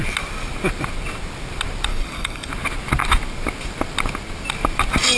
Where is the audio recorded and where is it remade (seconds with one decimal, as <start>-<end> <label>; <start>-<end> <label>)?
0.0-1.9 recorded; 1.9-2.5 remade; 2.5-5.2 recorded